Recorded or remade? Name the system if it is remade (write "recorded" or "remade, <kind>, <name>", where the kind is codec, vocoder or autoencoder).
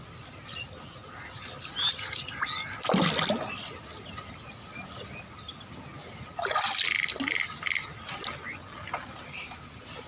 recorded